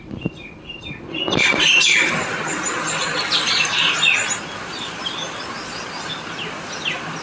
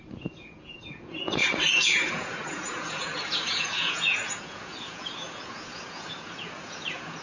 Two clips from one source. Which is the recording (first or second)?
first